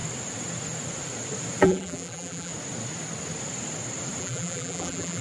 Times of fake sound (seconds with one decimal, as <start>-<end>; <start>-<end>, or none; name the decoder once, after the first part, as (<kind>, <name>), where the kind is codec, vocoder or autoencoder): 1.6-2.5 (vocoder, BigVGAN v2); 4.2-5.2